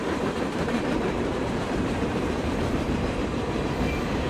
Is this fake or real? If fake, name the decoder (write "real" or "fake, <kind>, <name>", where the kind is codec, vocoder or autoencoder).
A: fake, vocoder, BigVGAN v2